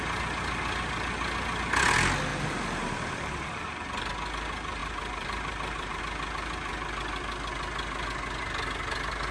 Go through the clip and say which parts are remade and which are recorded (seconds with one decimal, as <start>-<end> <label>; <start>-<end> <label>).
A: 0.0-2.3 recorded; 2.3-4.1 remade; 4.1-4.8 recorded; 4.8-6.0 remade; 6.0-9.3 recorded